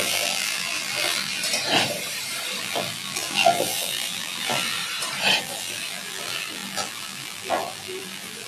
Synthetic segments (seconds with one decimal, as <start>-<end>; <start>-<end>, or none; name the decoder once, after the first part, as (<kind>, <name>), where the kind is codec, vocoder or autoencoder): 0.0-1.4 (vocoder, BigVGAN v2); 2.6-4.8; 5.4-8.5